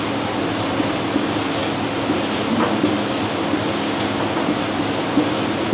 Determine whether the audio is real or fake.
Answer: real